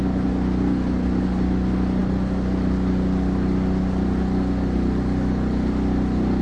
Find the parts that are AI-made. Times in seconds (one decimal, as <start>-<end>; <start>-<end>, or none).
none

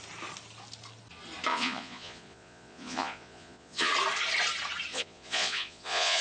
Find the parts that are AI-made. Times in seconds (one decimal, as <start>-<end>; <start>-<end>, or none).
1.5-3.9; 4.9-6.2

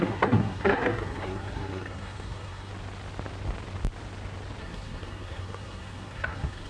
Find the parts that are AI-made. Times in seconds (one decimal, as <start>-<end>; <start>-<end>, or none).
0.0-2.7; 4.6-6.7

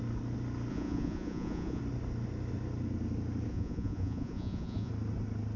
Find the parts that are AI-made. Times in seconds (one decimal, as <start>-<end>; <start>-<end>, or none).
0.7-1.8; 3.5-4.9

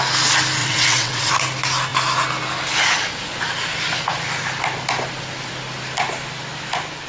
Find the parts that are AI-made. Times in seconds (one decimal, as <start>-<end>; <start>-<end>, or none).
0.6-1.3

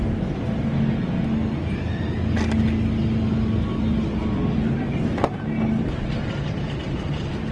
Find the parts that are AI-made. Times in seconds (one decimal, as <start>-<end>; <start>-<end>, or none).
3.7-5.4

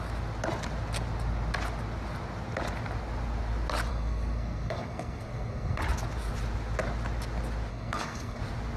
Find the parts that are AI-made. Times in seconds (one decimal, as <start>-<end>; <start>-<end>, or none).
3.9-5.8; 7.7-8.4

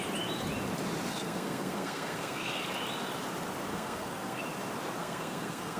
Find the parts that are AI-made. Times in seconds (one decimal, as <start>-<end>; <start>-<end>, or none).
1.1-2.6; 3.7-4.4; 5.0-5.8